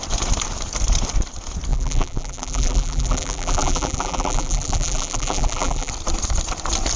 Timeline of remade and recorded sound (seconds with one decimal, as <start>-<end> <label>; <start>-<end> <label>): 0.0-1.7 recorded; 1.7-5.9 remade; 5.9-7.0 recorded